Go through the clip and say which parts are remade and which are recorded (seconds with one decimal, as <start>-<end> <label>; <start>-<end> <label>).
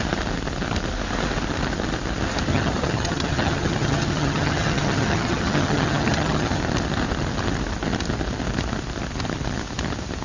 0.0-2.5 recorded; 2.5-6.6 remade; 6.6-10.2 recorded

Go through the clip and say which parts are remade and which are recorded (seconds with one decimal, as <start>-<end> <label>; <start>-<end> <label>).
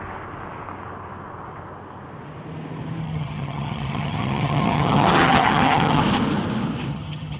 0.0-3.0 recorded; 3.0-6.0 remade; 6.0-6.9 recorded; 6.9-7.4 remade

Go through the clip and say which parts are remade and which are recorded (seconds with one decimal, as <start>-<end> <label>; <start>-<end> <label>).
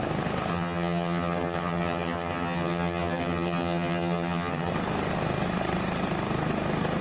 0.0-0.5 recorded; 0.5-4.7 remade; 4.7-7.0 recorded